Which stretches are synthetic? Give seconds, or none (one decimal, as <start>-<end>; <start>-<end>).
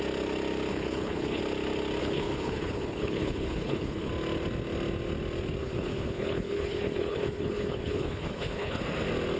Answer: 0.7-1.4; 2.0-4.1; 5.6-8.8